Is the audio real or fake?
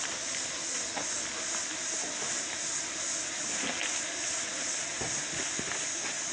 real